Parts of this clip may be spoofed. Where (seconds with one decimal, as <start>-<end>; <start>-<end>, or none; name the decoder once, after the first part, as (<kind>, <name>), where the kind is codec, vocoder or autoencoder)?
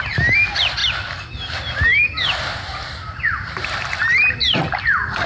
none